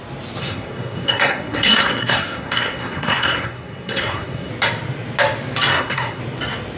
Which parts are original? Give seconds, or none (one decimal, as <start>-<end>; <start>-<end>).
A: 0.0-0.4; 4.5-5.7; 6.2-6.8